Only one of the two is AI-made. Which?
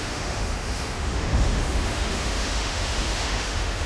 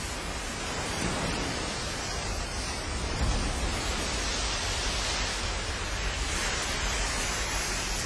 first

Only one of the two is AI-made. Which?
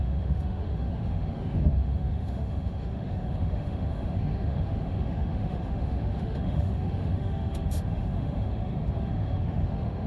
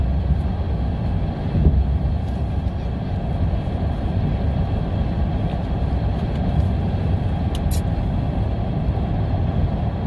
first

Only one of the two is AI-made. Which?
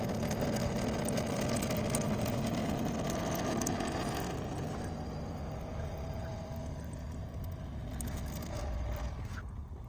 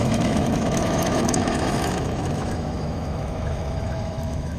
second